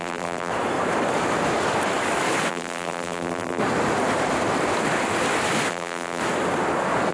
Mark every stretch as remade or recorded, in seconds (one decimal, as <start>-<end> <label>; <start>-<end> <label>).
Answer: 0.0-0.5 remade; 0.5-2.5 recorded; 2.5-3.6 remade; 3.6-5.7 recorded; 5.7-6.2 remade; 6.2-7.1 recorded